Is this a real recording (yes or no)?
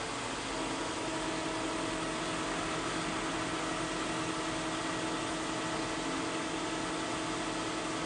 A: yes